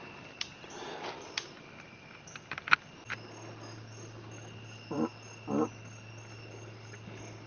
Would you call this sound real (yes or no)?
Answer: yes